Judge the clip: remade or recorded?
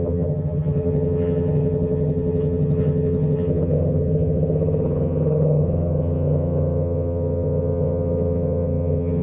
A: remade